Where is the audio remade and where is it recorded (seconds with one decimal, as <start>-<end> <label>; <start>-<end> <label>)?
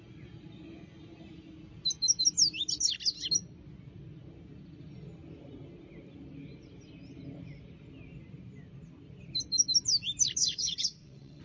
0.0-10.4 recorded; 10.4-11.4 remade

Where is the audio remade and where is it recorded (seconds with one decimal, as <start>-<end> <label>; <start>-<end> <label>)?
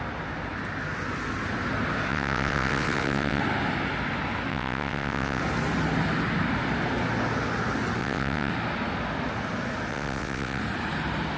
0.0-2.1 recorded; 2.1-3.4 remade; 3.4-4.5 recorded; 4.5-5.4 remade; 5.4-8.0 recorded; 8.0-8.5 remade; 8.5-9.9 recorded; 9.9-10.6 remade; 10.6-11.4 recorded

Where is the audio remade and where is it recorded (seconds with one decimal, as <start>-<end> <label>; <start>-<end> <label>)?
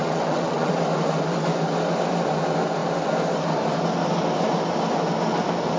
0.0-0.7 remade; 0.7-5.8 recorded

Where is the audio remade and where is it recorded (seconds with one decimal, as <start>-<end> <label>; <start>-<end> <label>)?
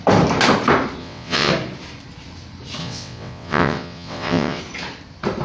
0.0-1.0 recorded; 1.0-1.5 remade; 1.5-2.8 recorded; 2.8-4.6 remade; 4.6-5.4 recorded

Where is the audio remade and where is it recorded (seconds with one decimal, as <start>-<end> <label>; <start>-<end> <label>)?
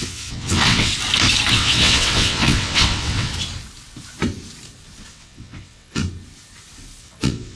0.0-0.9 remade; 0.9-1.5 recorded; 1.5-3.3 remade; 3.3-5.1 recorded; 5.1-6.0 remade; 6.0-7.0 recorded; 7.0-7.6 remade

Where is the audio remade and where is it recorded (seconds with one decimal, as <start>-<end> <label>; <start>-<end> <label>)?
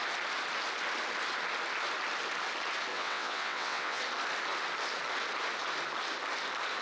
0.0-2.9 recorded; 2.9-4.0 remade; 4.0-6.8 recorded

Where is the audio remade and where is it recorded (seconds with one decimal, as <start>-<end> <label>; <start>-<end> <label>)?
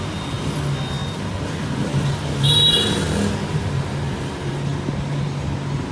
0.0-5.9 recorded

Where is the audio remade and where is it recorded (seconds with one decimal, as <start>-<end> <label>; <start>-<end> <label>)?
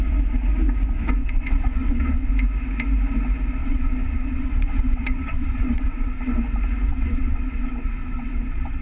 0.0-1.2 recorded; 1.2-2.3 remade; 2.3-3.6 recorded; 3.6-6.4 remade; 6.4-6.9 recorded; 6.9-8.8 remade